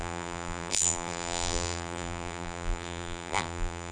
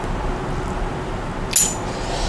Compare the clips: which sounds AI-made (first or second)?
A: first